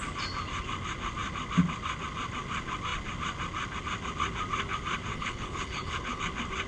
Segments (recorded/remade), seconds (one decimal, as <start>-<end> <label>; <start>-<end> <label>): 0.0-5.1 recorded; 5.1-6.2 remade; 6.2-6.7 recorded